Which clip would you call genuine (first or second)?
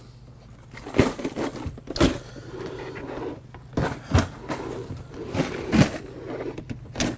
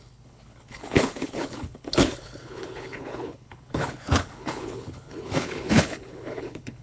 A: first